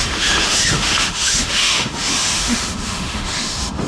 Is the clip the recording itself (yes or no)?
no